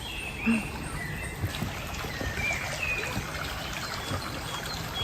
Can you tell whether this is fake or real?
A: real